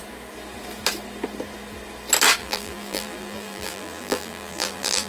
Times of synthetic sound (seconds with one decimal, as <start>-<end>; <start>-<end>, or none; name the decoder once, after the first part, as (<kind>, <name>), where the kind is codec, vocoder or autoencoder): 2.4-5.1 (vocoder, BigVGAN v2)